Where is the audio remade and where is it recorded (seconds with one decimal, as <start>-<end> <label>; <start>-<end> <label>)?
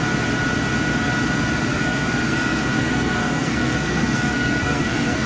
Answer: 0.0-1.7 recorded; 1.7-5.3 remade